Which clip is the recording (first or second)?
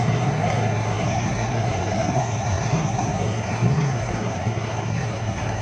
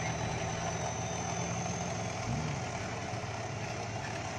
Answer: second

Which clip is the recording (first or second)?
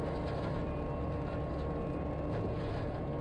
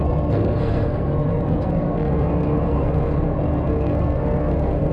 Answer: first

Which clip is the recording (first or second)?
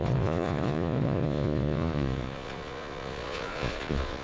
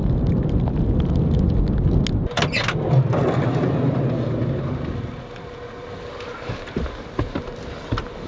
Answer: second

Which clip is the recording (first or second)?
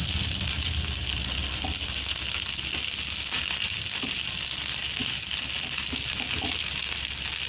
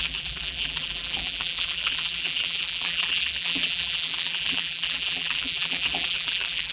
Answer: first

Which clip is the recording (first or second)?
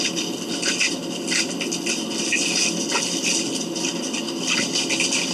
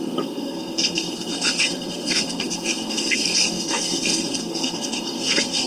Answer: first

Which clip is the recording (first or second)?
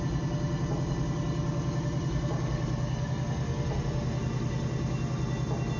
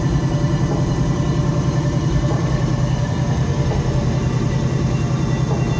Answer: first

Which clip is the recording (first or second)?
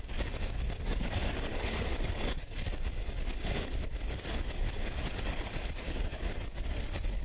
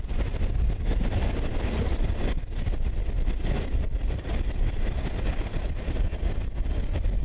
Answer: second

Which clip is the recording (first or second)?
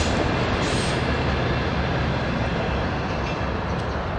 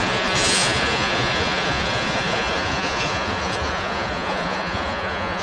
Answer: first